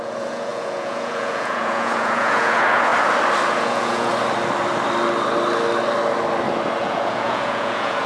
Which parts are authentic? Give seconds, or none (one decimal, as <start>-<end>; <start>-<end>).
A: 2.9-3.5; 4.1-6.8